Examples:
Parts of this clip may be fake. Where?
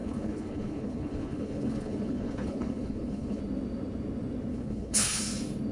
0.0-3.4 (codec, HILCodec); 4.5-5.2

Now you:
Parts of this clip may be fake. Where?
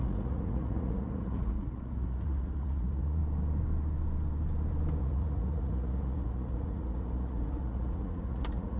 0.0-3.2 (vocoder, Vocos); 5.0-8.8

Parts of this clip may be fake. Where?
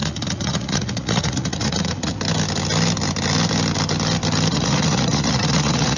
0.0-2.1 (vocoder, Vocos); 4.5-6.0